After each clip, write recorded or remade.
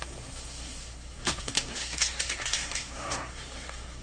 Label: remade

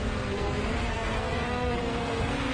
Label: remade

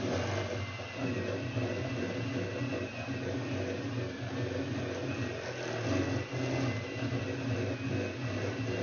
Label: recorded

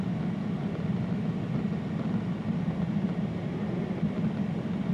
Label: recorded